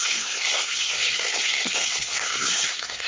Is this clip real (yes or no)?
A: no